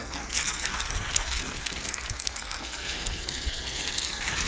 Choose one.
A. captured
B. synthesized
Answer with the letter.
B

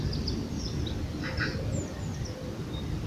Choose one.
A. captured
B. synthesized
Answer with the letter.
A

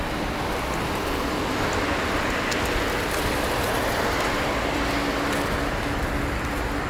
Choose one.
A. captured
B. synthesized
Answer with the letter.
A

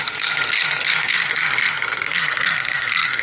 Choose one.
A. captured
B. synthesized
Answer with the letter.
B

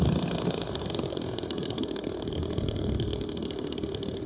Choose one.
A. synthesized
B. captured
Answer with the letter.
A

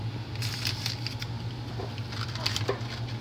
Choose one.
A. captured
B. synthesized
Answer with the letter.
A